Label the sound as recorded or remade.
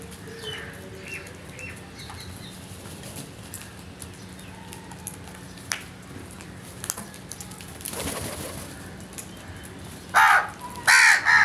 recorded